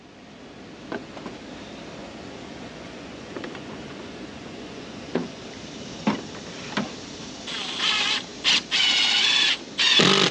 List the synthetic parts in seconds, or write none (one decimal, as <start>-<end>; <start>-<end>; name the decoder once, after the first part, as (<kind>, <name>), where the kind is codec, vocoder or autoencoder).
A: 2.0-5.4 (vocoder, Vocos)